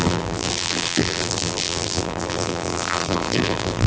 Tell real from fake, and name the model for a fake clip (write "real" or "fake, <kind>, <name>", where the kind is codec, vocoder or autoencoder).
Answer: fake, vocoder, BigVGAN v2